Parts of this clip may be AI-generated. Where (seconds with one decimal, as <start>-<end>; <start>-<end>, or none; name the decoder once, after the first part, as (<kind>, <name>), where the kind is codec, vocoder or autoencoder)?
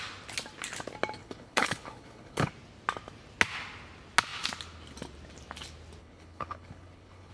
1.2-2.5 (codec, HILCodec); 6.0-7.3